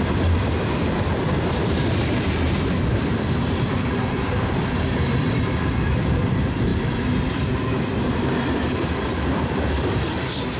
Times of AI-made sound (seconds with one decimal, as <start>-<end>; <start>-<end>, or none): 0.0-6.7; 7.4-10.6